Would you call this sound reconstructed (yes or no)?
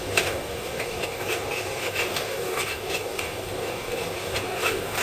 yes